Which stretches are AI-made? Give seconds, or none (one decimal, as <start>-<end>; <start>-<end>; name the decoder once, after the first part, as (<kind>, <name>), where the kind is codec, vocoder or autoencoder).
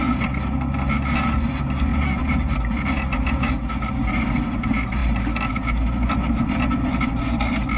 none